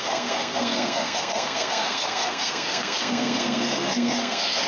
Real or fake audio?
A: fake